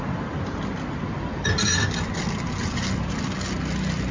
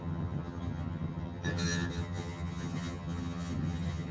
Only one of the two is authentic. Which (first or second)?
first